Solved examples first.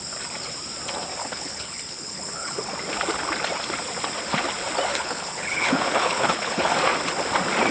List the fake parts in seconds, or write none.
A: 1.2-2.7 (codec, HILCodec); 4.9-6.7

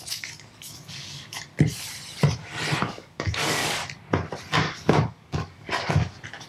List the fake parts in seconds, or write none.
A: 0.0-1.5 (codec, DAC); 2.8-3.8; 4.6-6.5

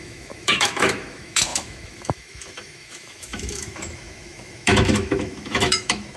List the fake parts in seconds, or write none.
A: 0.0-6.2 (autoencoder, DAC-VAE)

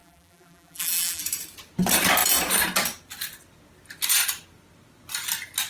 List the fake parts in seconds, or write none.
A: 0.0-1.2 (vocoder, BigVGAN v2)

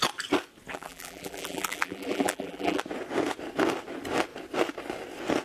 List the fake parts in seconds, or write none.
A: 0.7-2.8 (vocoder, BigVGAN v2)

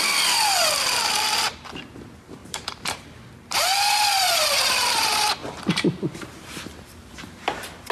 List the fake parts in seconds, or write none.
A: 2.4-4.6 (vocoder, BigVGAN v2); 5.4-6.6

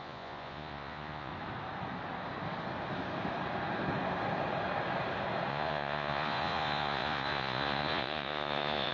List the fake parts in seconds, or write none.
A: 0.0-1.3 (vocoder, Vocos); 5.5-8.9